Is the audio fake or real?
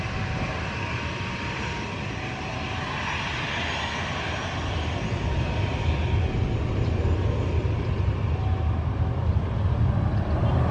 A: real